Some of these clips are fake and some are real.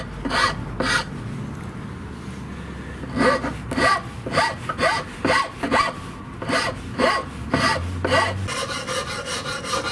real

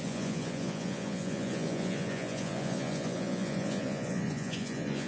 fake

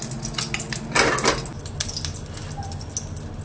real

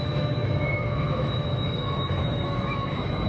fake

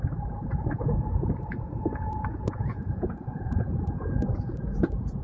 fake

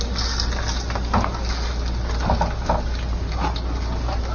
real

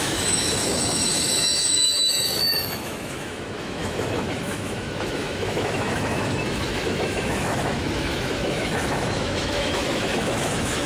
fake